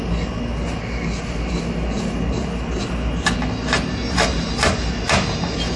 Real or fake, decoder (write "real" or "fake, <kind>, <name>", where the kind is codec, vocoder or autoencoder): real